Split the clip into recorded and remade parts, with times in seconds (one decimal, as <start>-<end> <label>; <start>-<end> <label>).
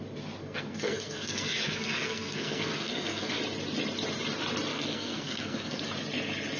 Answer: 0.0-0.4 recorded; 0.4-3.4 remade; 3.4-4.7 recorded; 4.7-5.8 remade; 5.8-6.6 recorded